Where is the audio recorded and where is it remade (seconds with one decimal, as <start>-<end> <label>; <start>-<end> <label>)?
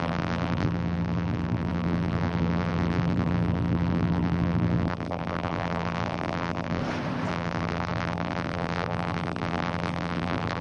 0.0-6.8 remade; 6.8-7.3 recorded; 7.3-10.6 remade